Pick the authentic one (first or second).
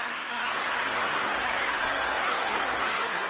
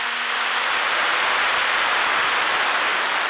second